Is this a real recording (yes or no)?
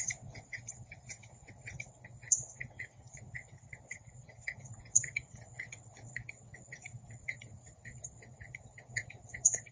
no